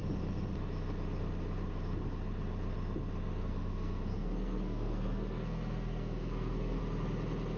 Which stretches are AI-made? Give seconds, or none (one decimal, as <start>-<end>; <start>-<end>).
3.4-6.8